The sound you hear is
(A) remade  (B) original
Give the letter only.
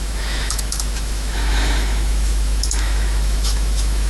A